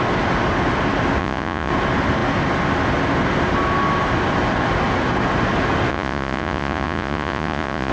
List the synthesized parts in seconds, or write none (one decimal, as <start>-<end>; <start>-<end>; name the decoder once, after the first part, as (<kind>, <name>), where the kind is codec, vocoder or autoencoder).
1.2-1.7 (vocoder, Vocos); 5.9-7.9